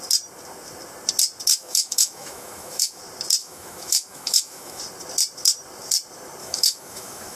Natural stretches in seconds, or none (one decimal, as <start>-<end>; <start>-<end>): 0.0-1.5; 3.0-3.4; 4.8-6.4